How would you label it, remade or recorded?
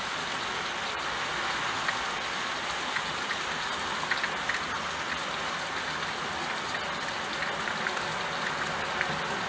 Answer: recorded